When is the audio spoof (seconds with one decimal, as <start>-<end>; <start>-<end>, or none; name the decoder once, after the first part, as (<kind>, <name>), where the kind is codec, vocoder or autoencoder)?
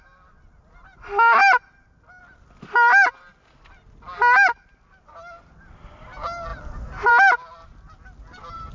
none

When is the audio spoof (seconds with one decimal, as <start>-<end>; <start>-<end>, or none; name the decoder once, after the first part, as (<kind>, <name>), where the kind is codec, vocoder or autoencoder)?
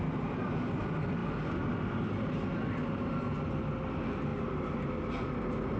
none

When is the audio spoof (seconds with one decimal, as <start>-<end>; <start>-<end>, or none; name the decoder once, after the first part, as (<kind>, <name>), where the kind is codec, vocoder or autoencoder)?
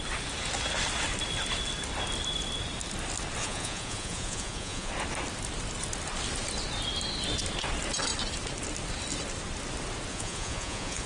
3.4-4.9 (vocoder, Vocos); 10.1-11.1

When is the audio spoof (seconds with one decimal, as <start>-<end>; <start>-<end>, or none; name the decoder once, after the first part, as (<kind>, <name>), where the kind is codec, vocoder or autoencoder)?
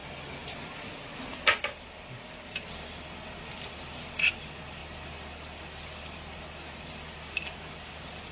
none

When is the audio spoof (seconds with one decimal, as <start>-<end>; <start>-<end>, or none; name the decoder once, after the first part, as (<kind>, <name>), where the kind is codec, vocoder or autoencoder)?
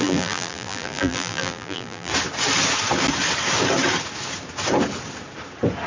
0.0-2.1 (vocoder, BigVGAN v2)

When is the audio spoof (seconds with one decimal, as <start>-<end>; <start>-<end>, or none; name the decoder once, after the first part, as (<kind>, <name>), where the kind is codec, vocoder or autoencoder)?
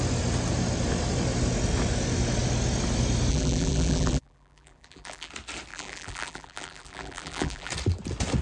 3.3-5.3 (vocoder, BigVGAN v2); 5.7-7.7